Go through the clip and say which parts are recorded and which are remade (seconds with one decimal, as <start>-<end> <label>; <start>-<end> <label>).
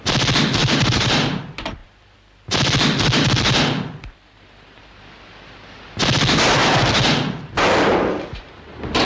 0.0-0.6 recorded; 0.6-1.4 remade; 1.4-9.0 recorded